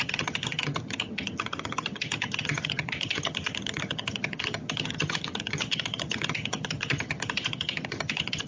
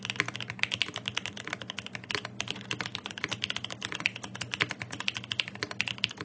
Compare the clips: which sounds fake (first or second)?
first